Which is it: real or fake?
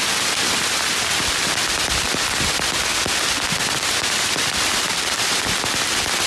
real